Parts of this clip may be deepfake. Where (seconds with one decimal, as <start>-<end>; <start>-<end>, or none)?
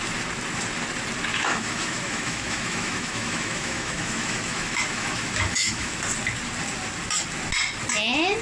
1.3-6.0